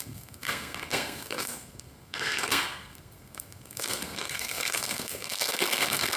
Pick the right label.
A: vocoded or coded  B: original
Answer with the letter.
A